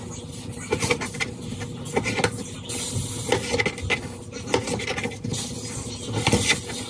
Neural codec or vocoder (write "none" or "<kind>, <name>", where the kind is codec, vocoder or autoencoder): none